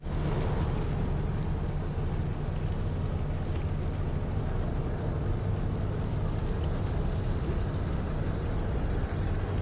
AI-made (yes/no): no